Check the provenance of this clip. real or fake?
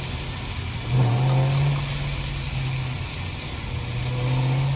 real